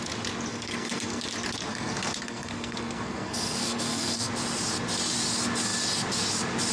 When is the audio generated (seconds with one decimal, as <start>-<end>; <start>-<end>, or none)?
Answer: 0.5-1.2; 1.7-4.3